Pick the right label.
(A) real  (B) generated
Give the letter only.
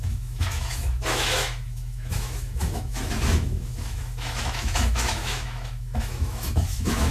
B